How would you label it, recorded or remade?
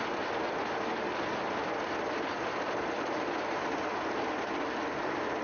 recorded